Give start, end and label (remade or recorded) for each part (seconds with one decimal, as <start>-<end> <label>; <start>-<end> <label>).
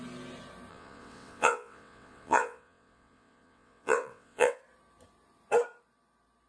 0.0-0.7 recorded; 0.7-4.6 remade; 4.6-6.5 recorded